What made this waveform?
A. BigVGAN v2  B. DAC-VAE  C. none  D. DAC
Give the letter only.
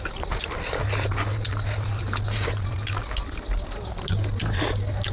C